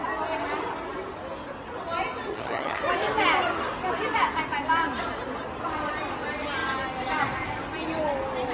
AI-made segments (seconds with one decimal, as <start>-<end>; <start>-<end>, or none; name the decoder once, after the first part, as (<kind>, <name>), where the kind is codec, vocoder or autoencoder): 2.3-2.8 (vocoder, HiFi-GAN)